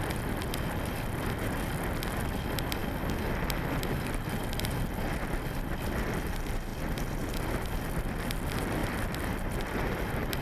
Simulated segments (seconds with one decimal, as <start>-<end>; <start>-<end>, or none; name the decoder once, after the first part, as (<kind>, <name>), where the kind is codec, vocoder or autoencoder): 8.8-10.0 (vocoder, BigVGAN v2)